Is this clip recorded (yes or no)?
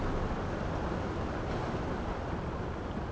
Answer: yes